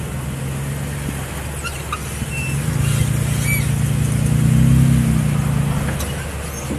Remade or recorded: recorded